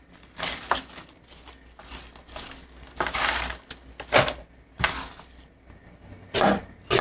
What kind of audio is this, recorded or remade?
recorded